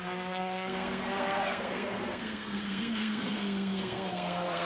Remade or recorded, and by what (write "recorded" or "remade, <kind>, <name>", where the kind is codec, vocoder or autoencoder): remade, codec, SNAC